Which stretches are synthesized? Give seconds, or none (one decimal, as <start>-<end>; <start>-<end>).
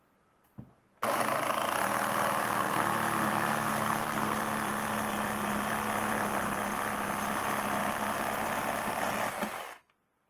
2.4-2.9; 3.3-4.4